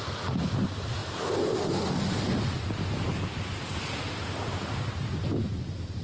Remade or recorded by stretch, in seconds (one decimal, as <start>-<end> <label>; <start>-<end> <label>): 0.0-1.0 recorded; 1.0-3.8 remade; 3.8-6.0 recorded